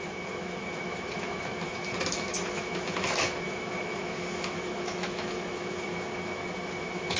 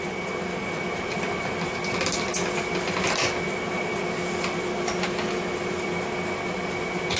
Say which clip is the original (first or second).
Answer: second